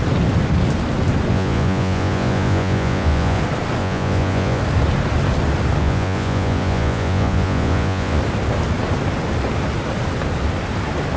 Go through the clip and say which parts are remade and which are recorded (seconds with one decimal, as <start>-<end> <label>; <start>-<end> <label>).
0.0-1.3 recorded; 1.3-3.4 remade; 3.4-3.8 recorded; 3.8-4.6 remade; 4.6-5.8 recorded; 5.8-8.2 remade; 8.2-11.2 recorded